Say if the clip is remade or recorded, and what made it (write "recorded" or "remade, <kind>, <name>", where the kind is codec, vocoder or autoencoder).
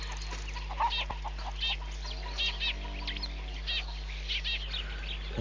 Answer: recorded